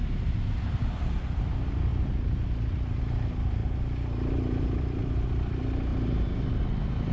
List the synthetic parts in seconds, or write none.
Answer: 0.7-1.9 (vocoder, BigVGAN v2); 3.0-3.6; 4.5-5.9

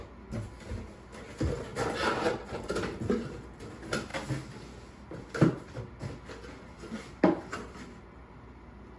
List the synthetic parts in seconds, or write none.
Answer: 1.7-3.6 (vocoder, BigVGAN v2)

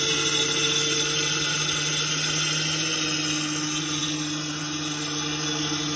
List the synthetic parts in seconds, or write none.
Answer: none

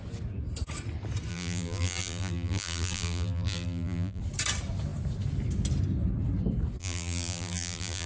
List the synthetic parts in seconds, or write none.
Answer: 1.3-4.2 (vocoder, BigVGAN v2); 6.8-8.1